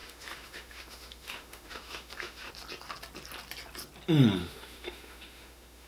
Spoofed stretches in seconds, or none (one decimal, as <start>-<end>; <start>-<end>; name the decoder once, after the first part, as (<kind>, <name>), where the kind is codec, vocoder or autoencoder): 0.0-2.5 (autoencoder, DAC-VAE); 4.4-5.9